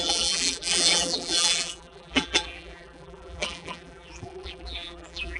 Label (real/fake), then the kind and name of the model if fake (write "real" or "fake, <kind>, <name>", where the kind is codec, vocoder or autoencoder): fake, vocoder, BigVGAN v2